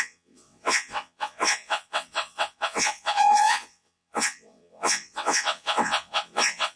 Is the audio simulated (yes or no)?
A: yes